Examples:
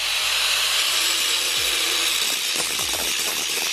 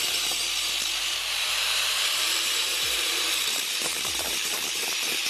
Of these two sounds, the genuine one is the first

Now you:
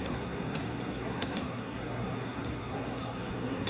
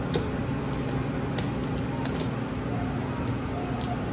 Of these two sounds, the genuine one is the second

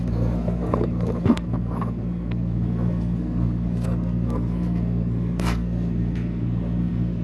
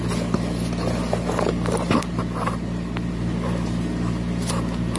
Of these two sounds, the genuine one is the second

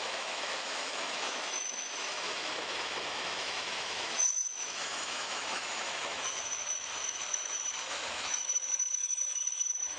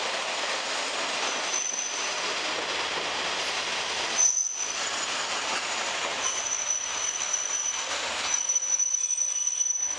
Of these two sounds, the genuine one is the second